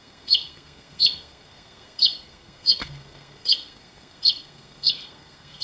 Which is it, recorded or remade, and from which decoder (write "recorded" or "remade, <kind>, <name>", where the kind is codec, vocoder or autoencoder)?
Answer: remade, codec, SNAC